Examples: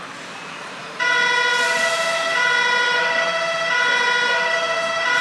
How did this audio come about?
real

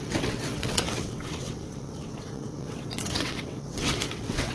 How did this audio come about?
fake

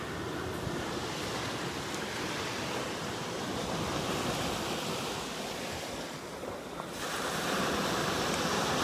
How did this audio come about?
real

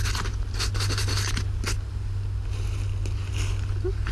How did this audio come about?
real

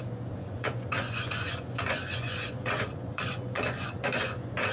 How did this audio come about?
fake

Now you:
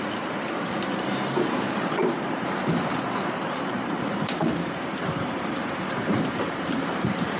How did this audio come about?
fake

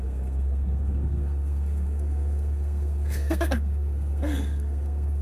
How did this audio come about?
fake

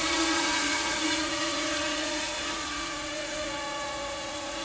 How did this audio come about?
fake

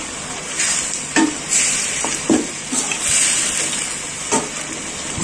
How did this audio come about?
real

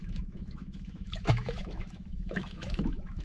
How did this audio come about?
fake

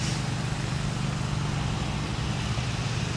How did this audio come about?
real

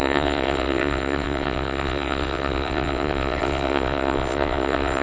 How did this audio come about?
fake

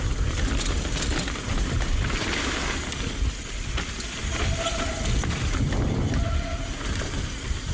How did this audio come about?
real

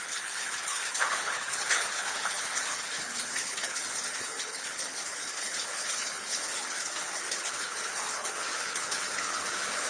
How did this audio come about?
fake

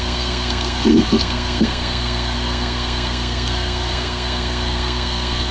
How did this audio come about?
fake